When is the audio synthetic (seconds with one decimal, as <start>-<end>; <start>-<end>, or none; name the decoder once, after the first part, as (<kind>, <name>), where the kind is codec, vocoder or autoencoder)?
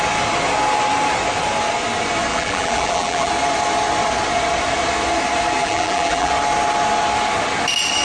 2.3-3.3 (vocoder, BigVGAN v2); 5.6-6.3